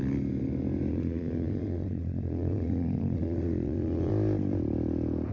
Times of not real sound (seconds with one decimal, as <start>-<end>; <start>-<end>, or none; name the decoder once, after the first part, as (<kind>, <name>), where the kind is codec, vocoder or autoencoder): 0.9-4.1 (vocoder, Vocos)